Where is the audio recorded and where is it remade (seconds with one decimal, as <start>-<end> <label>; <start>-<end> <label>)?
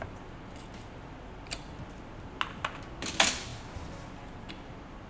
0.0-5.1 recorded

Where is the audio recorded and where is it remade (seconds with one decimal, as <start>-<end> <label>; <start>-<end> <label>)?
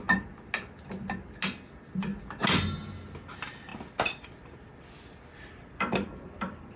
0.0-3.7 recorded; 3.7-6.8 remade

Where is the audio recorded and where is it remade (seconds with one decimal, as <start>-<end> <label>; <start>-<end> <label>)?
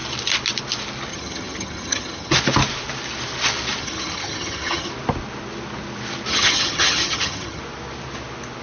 0.0-1.1 recorded; 1.1-2.3 remade; 2.3-3.8 recorded; 3.8-4.9 remade; 4.9-6.3 recorded; 6.3-7.6 remade; 7.6-8.6 recorded